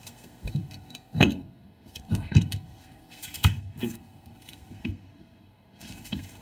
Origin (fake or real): fake